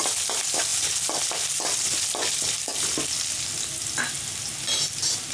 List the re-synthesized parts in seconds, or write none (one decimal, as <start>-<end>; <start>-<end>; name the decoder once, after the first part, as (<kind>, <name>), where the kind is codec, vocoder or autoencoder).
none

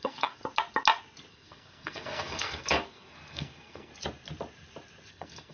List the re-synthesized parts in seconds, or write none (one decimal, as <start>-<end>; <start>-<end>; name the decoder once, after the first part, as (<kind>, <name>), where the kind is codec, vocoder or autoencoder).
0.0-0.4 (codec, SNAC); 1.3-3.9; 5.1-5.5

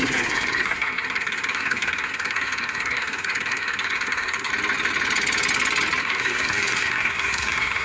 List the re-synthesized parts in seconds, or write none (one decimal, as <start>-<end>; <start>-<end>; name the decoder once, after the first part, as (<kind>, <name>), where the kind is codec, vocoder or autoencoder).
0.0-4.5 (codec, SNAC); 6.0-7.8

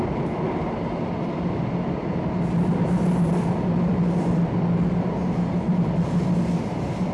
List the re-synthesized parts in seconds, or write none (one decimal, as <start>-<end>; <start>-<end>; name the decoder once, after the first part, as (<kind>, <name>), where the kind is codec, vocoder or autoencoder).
none

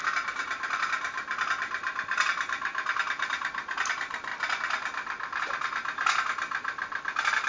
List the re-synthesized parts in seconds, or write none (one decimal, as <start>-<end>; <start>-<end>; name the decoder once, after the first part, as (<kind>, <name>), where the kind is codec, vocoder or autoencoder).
none

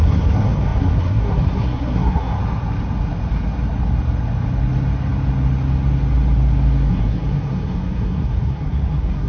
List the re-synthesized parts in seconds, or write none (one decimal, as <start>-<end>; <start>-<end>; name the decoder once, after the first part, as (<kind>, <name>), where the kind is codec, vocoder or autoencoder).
0.0-2.4 (codec, SNAC); 6.9-9.3

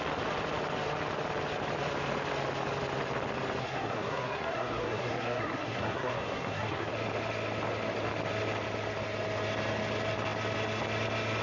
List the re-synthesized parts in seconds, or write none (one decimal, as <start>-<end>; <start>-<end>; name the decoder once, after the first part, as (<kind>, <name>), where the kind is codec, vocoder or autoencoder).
3.6-6.9 (codec, SNAC)

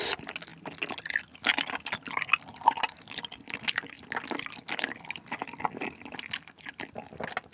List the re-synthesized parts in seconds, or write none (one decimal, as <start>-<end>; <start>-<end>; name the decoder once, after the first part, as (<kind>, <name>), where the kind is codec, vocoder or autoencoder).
none